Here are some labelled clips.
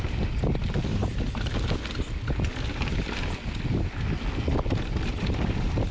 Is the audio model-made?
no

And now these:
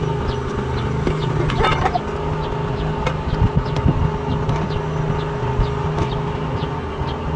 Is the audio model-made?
no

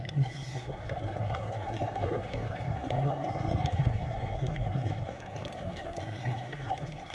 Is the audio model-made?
yes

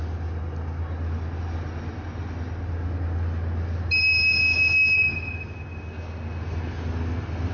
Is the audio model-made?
no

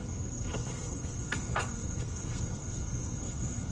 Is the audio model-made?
yes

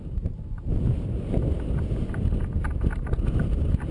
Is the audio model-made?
no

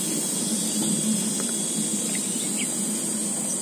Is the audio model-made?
no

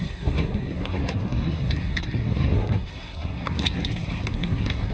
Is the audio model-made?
yes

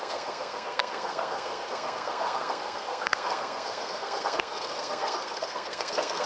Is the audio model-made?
yes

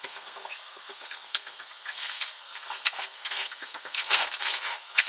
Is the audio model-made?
yes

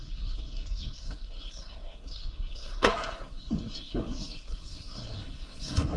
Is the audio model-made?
yes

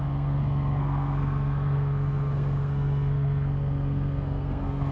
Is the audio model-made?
yes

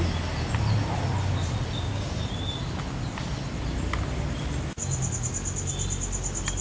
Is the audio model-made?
no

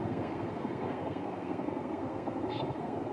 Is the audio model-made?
yes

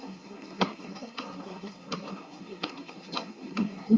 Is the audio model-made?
yes